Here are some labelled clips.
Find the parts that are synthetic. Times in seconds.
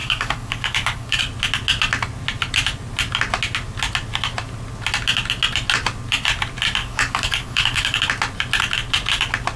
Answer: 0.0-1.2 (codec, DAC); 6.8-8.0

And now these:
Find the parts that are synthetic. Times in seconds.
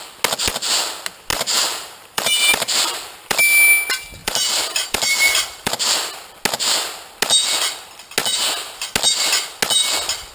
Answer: 1.3-3.4 (vocoder, BigVGAN v2); 4.2-5.7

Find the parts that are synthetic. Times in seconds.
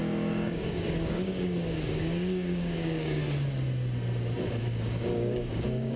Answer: 0.0-3.2 (codec, DAC); 4.5-6.0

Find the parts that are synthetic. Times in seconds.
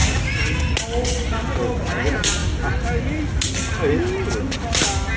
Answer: none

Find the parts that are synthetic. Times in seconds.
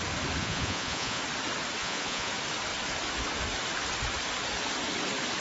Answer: 0.4-1.2 (vocoder, Vocos); 1.8-2.3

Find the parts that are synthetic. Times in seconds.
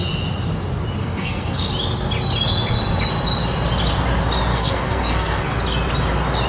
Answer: 1.0-1.7 (codec, SNAC); 4.5-5.6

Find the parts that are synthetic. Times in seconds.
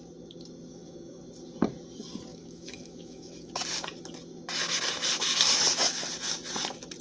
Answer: 0.7-1.2 (autoencoder, DAC-VAE); 2.3-3.5